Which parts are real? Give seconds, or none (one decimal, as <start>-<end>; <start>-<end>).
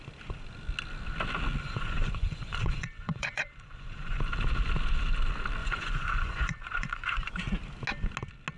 0.0-1.6; 4.2-5.6; 7.3-8.6